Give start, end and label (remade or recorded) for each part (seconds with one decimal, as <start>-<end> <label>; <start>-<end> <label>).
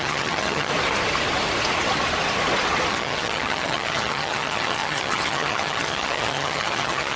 0.0-0.7 remade; 0.7-2.9 recorded; 2.9-7.2 remade